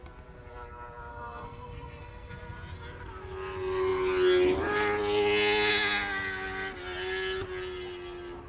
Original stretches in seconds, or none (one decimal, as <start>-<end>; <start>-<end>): 0.0-1.1; 2.3-8.5